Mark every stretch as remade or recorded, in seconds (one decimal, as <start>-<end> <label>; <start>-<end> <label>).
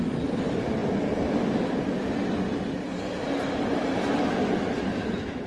0.0-4.9 recorded; 4.9-5.5 remade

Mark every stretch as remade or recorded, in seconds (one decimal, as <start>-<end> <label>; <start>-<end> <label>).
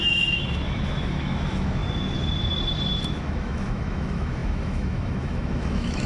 0.0-1.8 remade; 1.8-3.0 recorded; 3.0-6.1 remade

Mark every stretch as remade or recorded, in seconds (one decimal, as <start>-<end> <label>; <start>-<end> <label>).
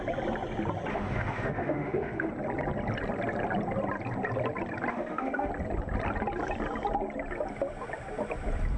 0.0-0.9 recorded; 0.9-2.3 remade; 2.3-4.9 recorded; 4.9-5.5 remade; 5.5-8.8 recorded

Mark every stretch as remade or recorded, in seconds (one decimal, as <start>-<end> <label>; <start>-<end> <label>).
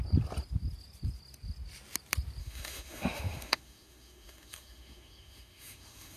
0.0-2.4 recorded; 2.4-6.2 remade